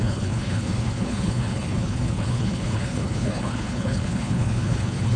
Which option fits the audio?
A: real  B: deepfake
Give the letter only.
B